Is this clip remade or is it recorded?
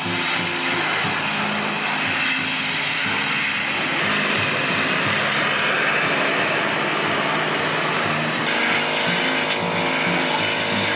recorded